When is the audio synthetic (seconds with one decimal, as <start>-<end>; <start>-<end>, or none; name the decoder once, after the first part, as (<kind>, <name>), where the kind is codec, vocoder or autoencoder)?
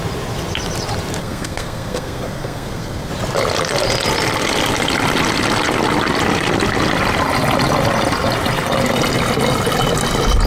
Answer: 1.2-3.1 (codec, SNAC)